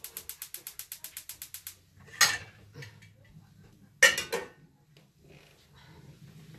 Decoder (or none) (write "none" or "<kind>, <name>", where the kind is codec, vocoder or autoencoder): none